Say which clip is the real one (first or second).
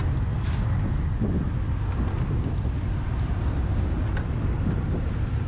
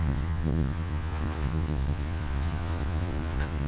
first